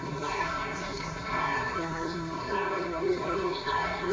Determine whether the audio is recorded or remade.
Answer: remade